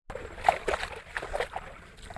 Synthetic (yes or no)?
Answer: no